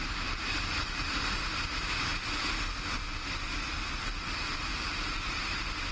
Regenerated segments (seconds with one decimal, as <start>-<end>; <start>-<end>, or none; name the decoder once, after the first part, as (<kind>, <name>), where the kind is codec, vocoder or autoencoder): none